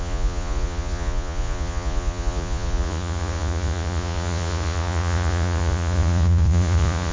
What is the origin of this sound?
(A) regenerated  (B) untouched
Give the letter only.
A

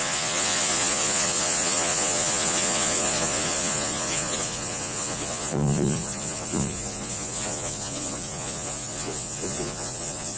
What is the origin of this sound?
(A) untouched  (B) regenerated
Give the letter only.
B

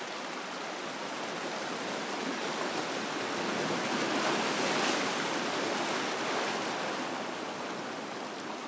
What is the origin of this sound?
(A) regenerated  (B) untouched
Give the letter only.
B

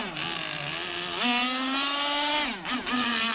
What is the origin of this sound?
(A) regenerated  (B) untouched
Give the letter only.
B